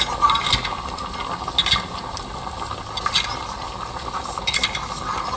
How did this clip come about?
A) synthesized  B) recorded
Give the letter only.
B